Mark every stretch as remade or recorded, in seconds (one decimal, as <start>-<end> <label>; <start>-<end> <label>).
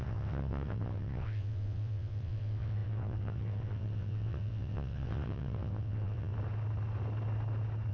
0.0-6.3 remade; 6.3-7.9 recorded